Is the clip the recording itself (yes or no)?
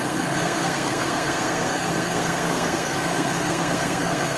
no